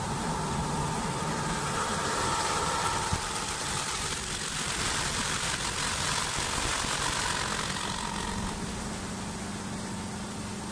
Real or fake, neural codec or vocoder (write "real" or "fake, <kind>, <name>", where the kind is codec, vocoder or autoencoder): real